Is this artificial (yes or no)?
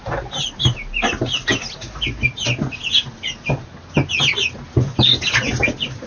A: no